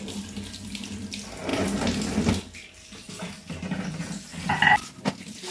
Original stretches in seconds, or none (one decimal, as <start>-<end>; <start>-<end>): 0.0-5.5